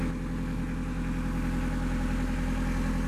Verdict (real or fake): real